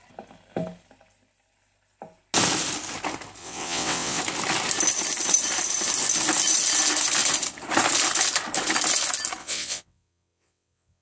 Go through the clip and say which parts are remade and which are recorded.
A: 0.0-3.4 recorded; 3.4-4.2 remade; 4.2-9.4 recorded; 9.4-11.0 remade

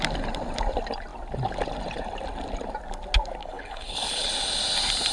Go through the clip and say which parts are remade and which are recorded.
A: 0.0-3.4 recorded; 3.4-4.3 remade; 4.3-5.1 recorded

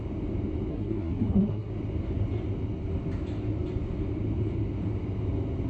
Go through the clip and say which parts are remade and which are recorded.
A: 0.0-0.7 recorded; 0.7-1.7 remade; 1.7-5.7 recorded